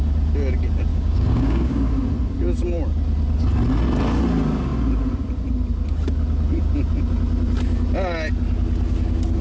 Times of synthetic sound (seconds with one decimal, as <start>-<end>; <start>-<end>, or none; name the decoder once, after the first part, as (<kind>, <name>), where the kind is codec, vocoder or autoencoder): 0.9-1.9 (codec, DAC)